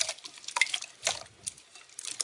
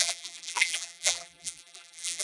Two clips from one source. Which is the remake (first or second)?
second